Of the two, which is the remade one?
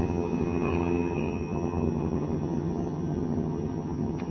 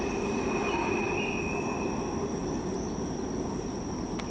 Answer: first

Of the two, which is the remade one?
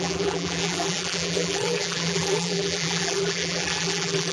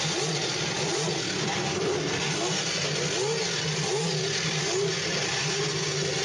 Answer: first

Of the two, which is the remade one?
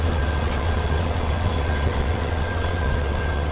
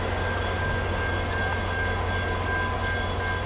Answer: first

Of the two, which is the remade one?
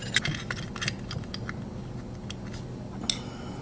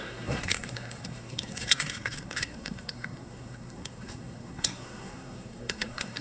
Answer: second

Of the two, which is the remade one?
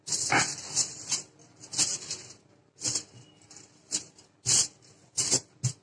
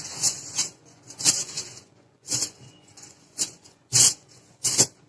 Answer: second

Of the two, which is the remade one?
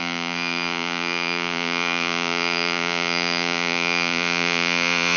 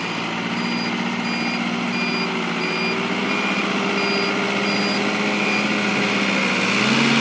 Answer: first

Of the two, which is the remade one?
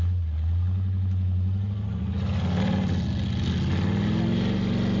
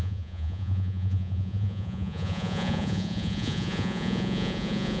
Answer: second